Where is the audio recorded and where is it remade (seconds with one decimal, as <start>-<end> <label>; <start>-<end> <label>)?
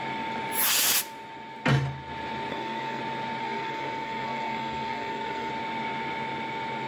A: 0.0-2.5 recorded; 2.5-3.0 remade; 3.0-3.4 recorded; 3.4-5.5 remade; 5.5-6.9 recorded